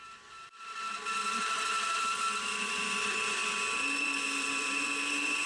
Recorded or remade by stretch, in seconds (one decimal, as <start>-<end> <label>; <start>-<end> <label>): 0.0-5.5 recorded